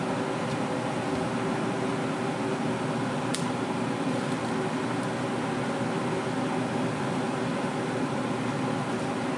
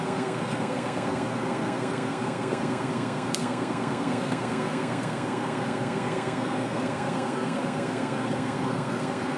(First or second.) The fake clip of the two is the second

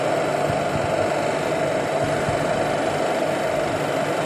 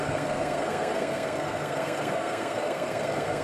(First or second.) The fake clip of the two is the second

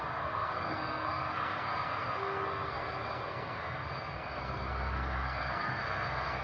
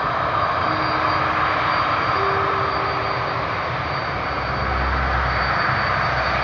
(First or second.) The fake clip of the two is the first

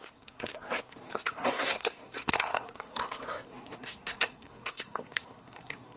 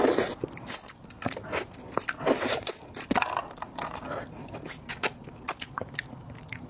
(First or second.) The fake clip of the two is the first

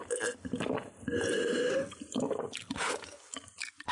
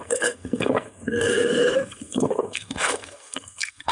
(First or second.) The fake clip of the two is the second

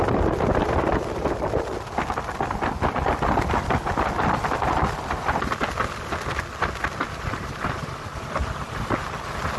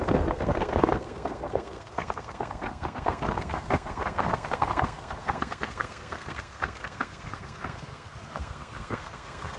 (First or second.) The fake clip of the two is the second